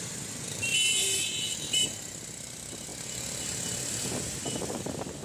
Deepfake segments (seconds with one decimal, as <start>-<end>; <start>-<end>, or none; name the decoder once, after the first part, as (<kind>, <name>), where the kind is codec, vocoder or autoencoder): 0.0-0.7 (vocoder, BigVGAN v2); 2.4-2.9; 4.2-5.2